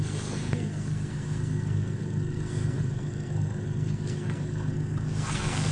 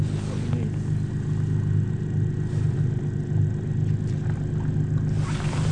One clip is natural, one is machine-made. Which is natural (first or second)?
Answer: second